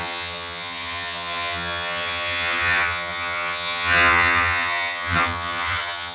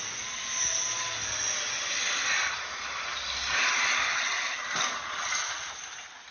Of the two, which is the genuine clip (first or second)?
second